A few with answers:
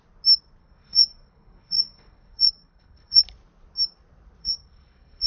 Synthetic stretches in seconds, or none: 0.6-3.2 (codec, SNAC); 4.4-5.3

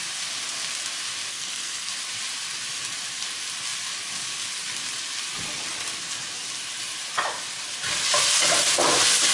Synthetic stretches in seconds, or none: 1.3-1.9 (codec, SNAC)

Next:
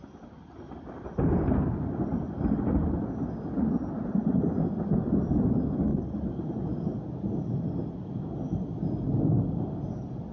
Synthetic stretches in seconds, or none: none